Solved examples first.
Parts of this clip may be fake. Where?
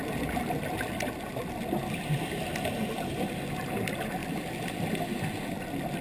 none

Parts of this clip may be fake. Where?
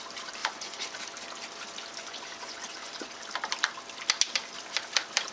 0.4-1.0 (vocoder, Vocos); 2.0-3.2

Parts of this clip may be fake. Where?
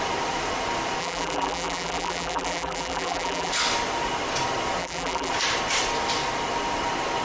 1.0-3.5 (vocoder, BigVGAN v2); 4.8-5.3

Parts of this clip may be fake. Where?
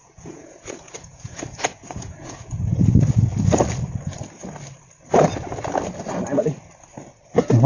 0.0-2.8 (vocoder, Vocos)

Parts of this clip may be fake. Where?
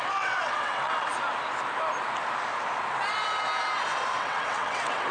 0.0-1.1 (vocoder, WaveNeXt); 4.2-5.1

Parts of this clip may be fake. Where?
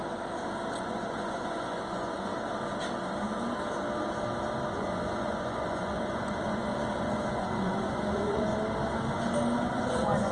0.7-2.3 (vocoder, Vocos); 4.7-8.5; 9.7-10.3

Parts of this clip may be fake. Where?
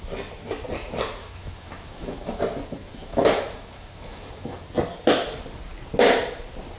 1.2-2.4 (autoencoder, DAC-VAE); 2.8-4.6